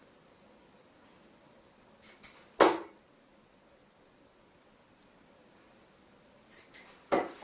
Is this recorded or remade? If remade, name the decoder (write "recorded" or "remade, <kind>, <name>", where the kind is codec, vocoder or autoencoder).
recorded